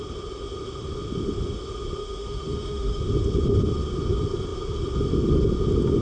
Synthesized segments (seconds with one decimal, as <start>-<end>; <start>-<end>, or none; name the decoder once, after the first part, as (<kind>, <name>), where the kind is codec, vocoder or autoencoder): 2.0-3.0 (autoencoder, DAC-VAE)